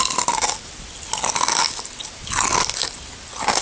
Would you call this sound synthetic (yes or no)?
no